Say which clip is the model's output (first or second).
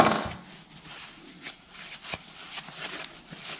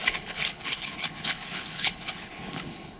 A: second